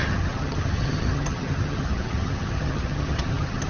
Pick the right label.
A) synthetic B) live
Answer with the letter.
A